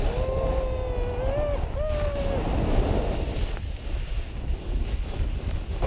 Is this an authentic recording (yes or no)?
yes